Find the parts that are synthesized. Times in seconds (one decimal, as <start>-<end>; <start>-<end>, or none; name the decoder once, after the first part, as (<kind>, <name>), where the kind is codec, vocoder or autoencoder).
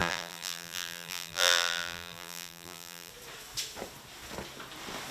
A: 0.0-3.1 (vocoder, BigVGAN v2)